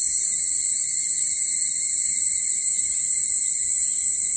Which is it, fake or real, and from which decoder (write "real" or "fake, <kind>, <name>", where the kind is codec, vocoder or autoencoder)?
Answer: real